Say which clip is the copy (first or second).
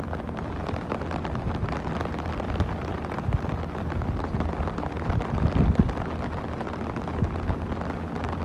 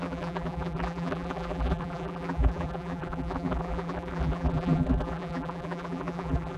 second